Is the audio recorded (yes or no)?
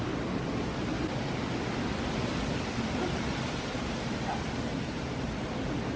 yes